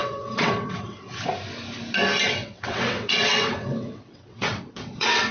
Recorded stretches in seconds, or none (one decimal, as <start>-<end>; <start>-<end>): 1.2-2.4